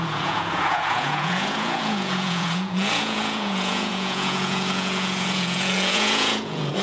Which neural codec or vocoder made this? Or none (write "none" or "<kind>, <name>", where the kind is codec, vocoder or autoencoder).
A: vocoder, Vocos